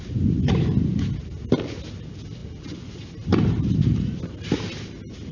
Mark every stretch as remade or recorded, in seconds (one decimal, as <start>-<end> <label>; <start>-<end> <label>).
0.0-5.3 recorded